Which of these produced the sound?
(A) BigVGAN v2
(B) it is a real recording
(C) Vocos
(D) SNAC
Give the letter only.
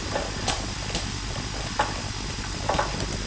B